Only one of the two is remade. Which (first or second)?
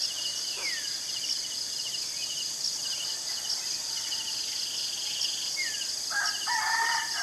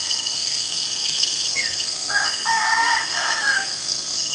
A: second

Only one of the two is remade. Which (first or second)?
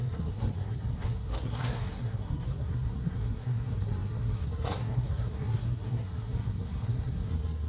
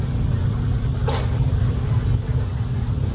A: first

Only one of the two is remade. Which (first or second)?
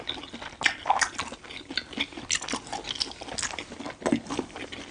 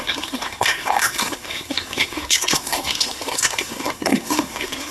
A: second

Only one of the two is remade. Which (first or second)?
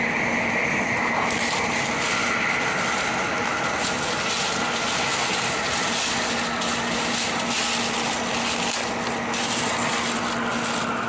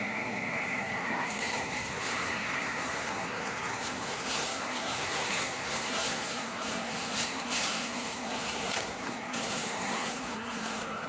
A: second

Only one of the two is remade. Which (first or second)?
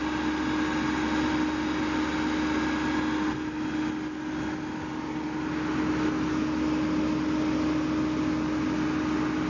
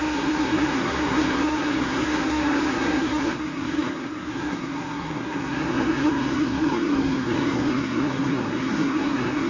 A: second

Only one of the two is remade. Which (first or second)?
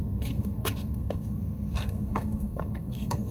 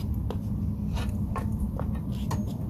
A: first